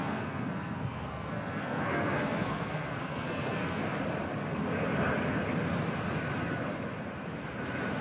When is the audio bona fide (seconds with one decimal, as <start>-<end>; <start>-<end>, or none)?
3.8-8.0